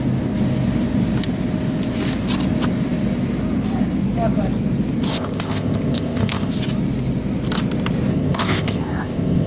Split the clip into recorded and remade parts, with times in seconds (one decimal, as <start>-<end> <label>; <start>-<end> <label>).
0.0-5.1 recorded; 5.1-6.5 remade; 6.5-8.1 recorded; 8.1-9.5 remade